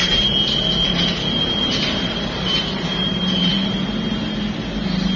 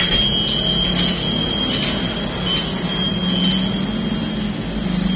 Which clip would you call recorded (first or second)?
second